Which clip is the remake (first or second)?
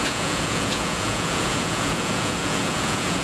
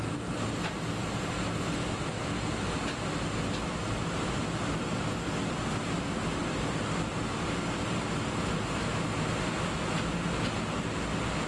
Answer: first